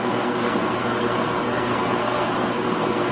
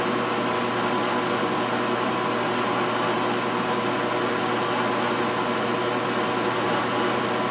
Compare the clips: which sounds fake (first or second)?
first